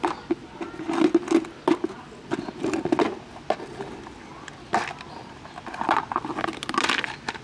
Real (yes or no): yes